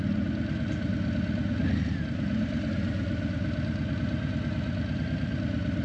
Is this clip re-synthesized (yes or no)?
no